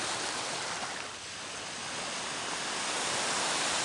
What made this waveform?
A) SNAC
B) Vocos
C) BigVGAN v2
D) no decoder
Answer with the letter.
D